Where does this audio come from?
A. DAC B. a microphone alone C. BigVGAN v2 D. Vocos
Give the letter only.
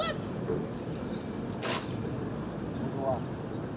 B